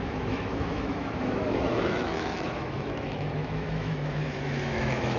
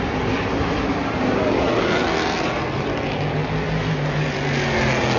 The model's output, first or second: first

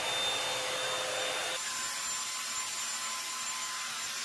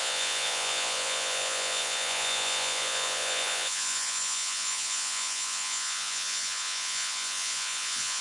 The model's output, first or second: second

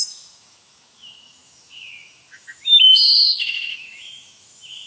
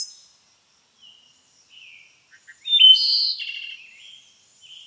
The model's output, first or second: first